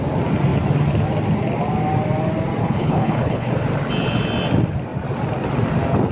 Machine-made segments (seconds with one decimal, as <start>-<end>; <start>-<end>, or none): 2.6-3.5